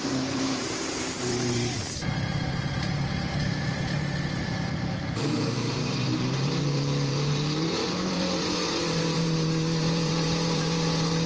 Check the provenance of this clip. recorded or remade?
remade